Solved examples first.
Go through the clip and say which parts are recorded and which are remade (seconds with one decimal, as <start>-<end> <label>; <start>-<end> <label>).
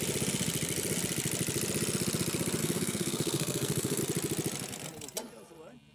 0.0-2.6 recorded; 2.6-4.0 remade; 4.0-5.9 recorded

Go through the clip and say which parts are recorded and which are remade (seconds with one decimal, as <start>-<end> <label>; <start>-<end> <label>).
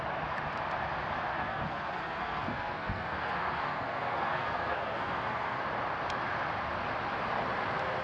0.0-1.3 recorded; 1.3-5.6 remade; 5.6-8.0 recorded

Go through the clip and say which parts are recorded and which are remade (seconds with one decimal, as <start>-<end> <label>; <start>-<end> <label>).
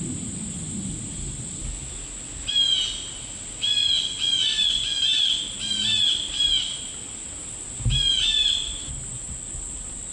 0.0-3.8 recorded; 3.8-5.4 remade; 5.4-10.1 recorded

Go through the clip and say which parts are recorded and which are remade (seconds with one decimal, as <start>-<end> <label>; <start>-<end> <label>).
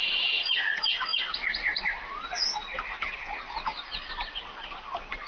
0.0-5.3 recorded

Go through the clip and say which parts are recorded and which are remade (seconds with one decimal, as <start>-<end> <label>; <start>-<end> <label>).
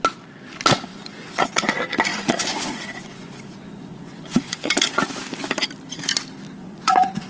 0.0-0.9 recorded; 0.9-1.7 remade; 1.7-2.1 recorded; 2.1-5.0 remade; 5.0-6.6 recorded; 6.6-7.3 remade